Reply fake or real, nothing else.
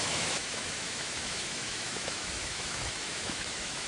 fake